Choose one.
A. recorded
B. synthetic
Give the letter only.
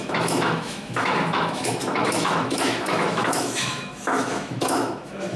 B